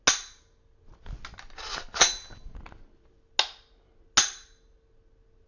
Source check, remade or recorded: recorded